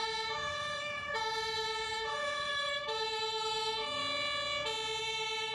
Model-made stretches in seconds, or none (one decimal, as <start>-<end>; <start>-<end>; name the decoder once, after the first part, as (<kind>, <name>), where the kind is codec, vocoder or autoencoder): 0.0-4.0 (autoencoder, DAC-VAE); 5.0-5.5